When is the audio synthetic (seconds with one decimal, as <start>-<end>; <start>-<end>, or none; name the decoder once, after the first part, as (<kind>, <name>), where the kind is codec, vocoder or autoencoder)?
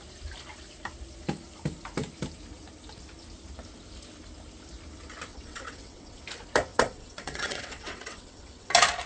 5.3-6.2 (vocoder, WaveNeXt); 6.7-8.7